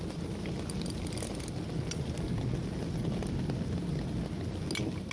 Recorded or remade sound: recorded